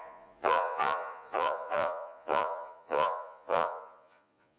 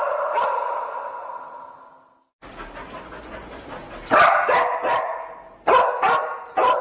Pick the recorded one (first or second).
second